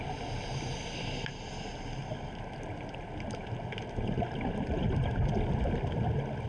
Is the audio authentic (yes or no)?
yes